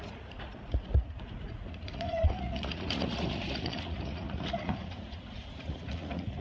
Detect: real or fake fake